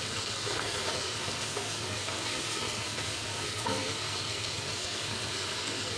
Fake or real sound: fake